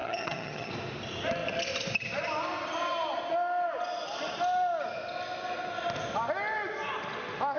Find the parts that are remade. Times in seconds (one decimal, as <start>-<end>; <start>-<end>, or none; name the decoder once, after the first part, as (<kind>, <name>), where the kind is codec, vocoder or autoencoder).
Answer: 0.0-0.7 (vocoder, HiFi-GAN)